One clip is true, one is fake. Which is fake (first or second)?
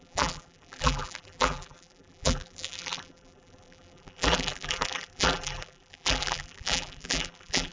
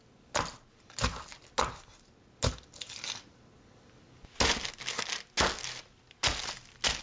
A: first